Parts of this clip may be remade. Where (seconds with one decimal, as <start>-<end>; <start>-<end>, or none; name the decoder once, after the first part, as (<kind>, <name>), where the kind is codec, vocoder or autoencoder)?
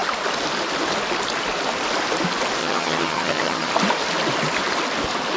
2.6-3.7 (vocoder, HiFi-GAN)